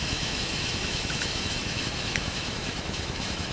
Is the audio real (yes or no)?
no